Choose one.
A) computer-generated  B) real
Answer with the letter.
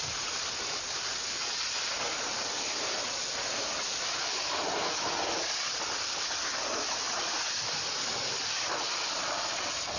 B